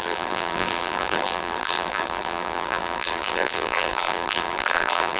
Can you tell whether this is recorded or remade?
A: remade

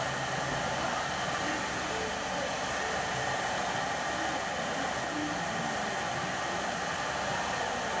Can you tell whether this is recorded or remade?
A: recorded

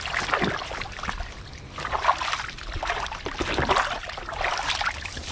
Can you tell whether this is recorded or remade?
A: recorded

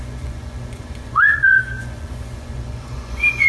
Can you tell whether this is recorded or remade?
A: remade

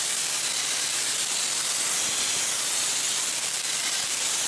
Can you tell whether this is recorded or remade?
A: recorded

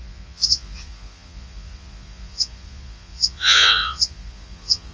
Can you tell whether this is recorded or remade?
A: remade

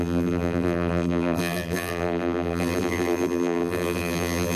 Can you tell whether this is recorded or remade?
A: remade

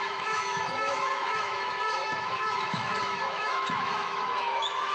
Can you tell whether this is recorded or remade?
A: remade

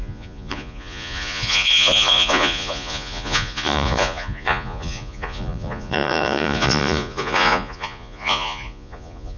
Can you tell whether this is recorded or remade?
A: remade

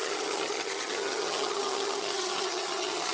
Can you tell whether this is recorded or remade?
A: remade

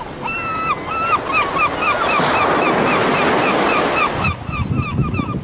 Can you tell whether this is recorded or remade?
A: recorded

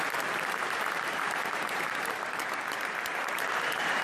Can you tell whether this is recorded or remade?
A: remade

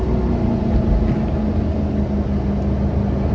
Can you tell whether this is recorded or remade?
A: recorded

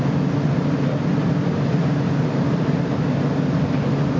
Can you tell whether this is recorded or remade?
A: recorded